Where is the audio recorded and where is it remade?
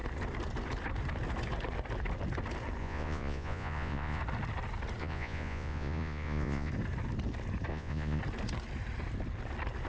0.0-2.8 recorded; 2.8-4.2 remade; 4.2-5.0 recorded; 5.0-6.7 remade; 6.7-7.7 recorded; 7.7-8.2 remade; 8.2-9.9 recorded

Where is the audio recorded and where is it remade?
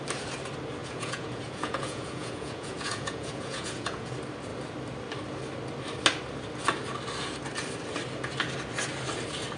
0.0-0.8 recorded; 0.8-4.1 remade; 4.1-9.6 recorded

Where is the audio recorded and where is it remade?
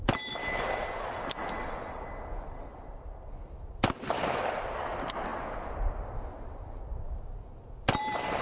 0.0-1.4 remade; 1.4-2.4 recorded; 2.4-5.3 remade; 5.3-6.9 recorded; 6.9-8.4 remade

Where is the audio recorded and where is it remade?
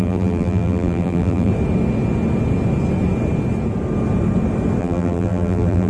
0.0-1.5 remade; 1.5-4.8 recorded; 4.8-5.9 remade